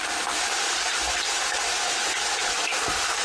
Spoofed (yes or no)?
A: no